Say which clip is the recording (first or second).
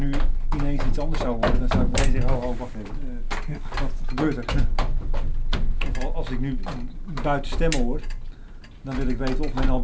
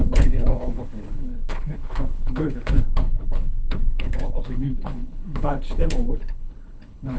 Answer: first